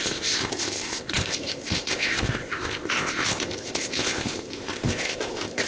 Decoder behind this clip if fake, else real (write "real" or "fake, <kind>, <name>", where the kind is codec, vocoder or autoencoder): fake, codec, ZipCodec